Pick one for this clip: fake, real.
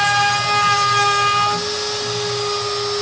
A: real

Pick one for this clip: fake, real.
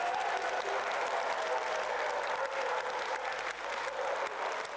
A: real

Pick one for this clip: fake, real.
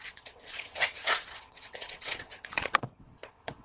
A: fake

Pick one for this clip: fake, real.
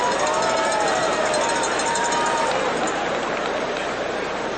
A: real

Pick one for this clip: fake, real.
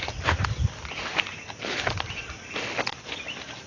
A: real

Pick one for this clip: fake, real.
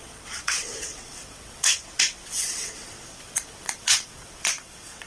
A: fake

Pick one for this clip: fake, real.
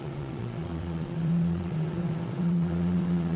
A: fake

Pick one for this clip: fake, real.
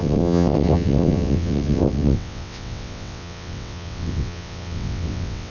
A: fake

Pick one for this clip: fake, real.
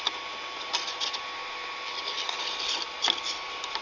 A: real